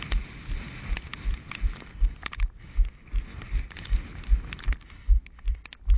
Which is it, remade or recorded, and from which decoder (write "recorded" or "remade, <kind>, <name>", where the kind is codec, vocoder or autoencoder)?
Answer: recorded